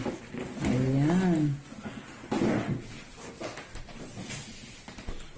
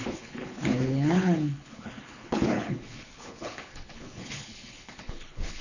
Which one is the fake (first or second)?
second